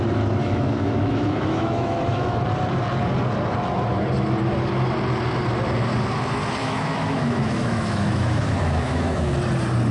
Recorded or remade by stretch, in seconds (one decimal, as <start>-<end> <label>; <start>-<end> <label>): 0.0-0.4 recorded; 0.4-2.4 remade; 2.4-6.6 recorded; 6.6-9.3 remade; 9.3-9.9 recorded